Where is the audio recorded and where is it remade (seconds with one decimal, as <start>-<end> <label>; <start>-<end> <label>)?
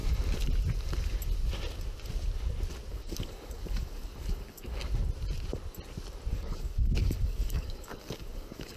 0.0-2.9 recorded; 2.9-4.8 remade; 4.8-6.3 recorded; 6.3-8.8 remade